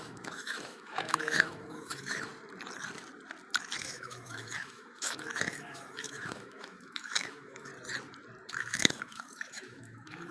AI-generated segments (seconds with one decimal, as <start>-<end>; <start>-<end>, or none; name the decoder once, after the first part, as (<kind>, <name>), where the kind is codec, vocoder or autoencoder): 0.0-2.3 (autoencoder, DAC-VAE); 3.8-7.7; 8.5-10.3